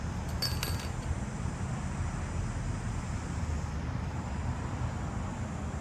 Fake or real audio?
real